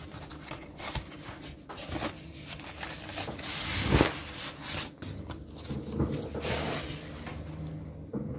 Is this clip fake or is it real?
real